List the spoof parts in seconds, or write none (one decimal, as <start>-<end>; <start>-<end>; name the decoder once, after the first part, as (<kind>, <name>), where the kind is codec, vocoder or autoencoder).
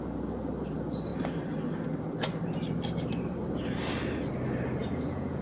4.8-5.4 (vocoder, Vocos)